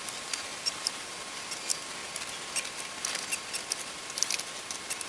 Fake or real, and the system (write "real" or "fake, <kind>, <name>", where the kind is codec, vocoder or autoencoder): real